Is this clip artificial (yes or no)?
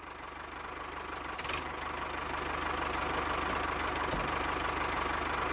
no